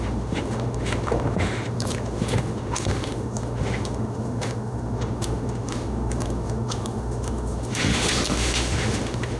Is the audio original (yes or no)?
no